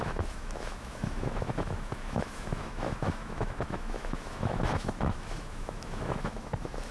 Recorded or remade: remade